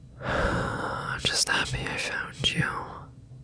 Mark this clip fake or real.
real